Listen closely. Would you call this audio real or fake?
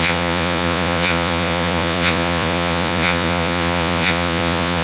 fake